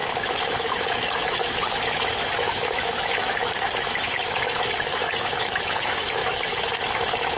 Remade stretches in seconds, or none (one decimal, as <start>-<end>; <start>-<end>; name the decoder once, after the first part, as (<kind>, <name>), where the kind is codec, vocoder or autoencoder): 0.0-7.4 (autoencoder, DAC-VAE)